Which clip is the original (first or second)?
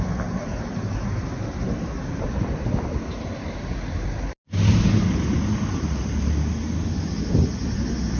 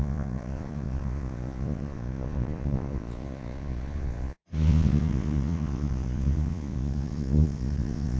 first